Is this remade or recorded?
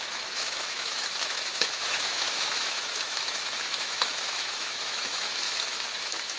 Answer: remade